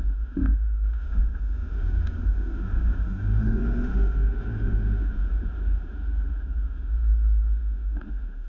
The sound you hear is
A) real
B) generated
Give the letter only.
B